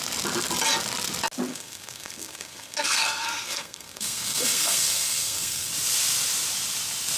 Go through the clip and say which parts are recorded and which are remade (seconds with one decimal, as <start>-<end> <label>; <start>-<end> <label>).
0.0-1.5 recorded; 1.5-5.7 remade; 5.7-7.2 recorded